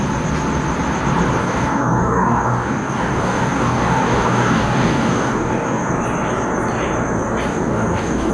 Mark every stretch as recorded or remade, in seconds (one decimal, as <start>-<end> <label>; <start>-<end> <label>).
0.0-1.4 recorded; 1.4-5.9 remade; 5.9-7.5 recorded; 7.5-8.3 remade